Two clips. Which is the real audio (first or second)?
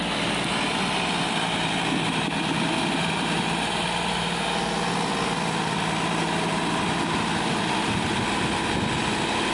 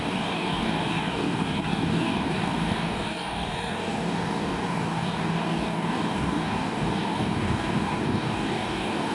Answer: first